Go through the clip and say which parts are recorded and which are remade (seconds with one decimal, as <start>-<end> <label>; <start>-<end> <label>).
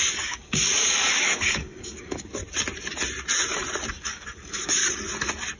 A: 0.0-2.4 remade; 2.4-3.9 recorded; 3.9-4.8 remade; 4.8-5.6 recorded